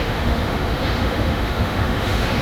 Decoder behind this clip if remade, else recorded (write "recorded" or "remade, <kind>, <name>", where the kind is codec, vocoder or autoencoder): remade, autoencoder, DAC-VAE